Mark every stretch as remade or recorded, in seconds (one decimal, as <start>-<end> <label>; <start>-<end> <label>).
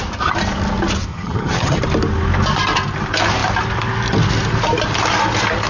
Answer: 0.0-1.1 recorded; 1.1-1.8 remade; 1.8-5.7 recorded